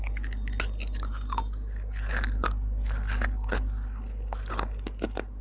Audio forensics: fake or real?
real